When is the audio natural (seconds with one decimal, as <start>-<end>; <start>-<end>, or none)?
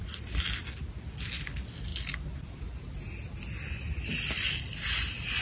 0.0-5.4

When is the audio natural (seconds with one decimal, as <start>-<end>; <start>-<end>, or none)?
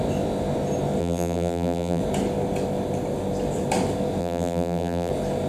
0.0-1.0; 2.0-4.2; 5.1-5.5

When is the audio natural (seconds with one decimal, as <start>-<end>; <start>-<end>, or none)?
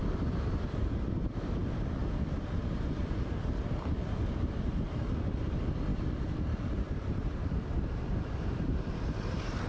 1.6-2.0; 2.6-5.9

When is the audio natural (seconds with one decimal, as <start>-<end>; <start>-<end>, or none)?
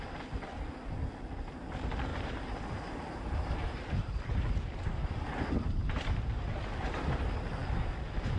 0.0-2.1; 7.1-8.4